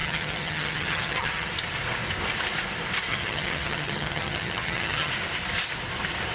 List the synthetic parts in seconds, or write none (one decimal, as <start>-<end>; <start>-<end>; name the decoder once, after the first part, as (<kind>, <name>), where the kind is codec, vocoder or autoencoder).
0.0-1.5 (vocoder, HiFi-GAN); 3.1-5.1